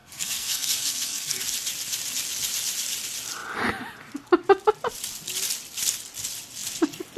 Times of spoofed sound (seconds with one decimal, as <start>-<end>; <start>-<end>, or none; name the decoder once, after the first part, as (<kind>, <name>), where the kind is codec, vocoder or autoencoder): 0.0-1.4 (codec, SNAC)